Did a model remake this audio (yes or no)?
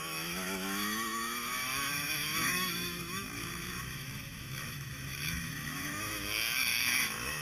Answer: yes